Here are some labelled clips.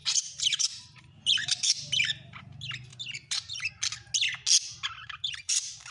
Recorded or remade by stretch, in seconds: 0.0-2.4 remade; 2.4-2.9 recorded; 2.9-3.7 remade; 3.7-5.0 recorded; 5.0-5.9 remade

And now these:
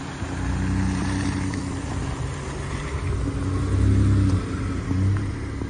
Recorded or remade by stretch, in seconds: 0.0-1.0 recorded; 1.0-2.9 remade; 2.9-5.7 recorded

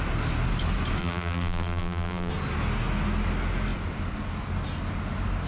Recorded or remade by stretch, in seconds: 0.0-1.0 recorded; 1.0-2.3 remade; 2.3-5.5 recorded